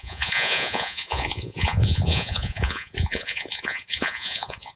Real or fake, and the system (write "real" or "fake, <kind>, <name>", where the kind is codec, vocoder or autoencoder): fake, vocoder, Vocos